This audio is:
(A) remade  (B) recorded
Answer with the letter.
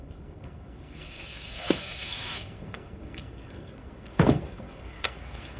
A